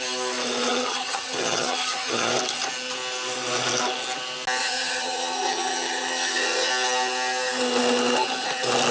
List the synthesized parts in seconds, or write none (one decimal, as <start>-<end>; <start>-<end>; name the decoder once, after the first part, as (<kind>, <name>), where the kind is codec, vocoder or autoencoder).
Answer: 0.7-2.3 (vocoder, HiFi-GAN); 4.6-6.7